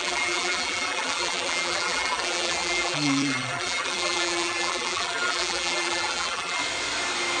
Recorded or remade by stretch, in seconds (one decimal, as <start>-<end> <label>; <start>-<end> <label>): 0.0-6.6 remade; 6.6-7.4 recorded